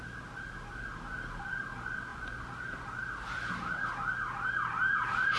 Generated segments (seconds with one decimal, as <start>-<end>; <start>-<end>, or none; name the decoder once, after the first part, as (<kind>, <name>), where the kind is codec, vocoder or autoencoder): none

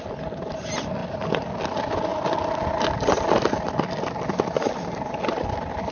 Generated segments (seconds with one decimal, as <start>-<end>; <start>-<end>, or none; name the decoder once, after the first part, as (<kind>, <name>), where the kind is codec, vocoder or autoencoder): none

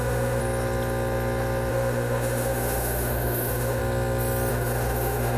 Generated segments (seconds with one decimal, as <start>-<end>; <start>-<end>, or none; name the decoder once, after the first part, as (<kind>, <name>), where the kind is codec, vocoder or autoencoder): 0.0-0.4 (autoencoder, DAC-VAE); 1.7-3.8; 4.5-5.4

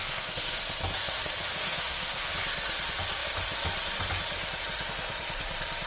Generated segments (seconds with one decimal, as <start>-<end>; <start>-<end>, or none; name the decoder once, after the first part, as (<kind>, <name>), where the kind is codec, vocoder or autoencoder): 0.0-0.6 (codec, SNAC); 1.5-2.3

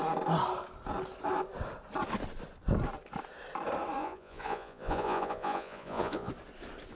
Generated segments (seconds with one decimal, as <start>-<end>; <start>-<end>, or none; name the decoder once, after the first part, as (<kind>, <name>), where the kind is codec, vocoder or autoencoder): 4.0-6.3 (vocoder, Vocos)

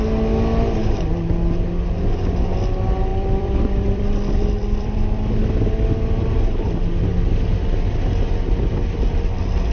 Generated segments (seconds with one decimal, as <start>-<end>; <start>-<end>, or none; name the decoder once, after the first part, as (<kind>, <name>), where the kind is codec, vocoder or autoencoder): 3.1-5.4 (vocoder, BigVGAN v2)

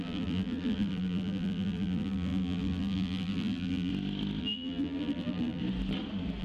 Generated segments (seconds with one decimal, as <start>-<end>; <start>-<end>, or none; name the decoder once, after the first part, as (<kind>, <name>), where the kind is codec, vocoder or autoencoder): 0.0-3.9 (vocoder, BigVGAN v2); 4.4-5.6